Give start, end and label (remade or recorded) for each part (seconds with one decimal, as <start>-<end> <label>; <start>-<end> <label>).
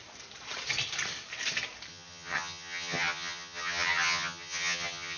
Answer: 0.0-1.9 recorded; 1.9-5.2 remade